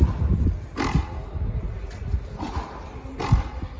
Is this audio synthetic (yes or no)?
no